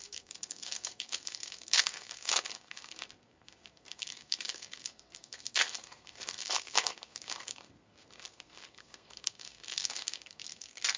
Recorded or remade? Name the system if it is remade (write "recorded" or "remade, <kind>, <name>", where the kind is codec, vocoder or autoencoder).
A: remade, codec, SNAC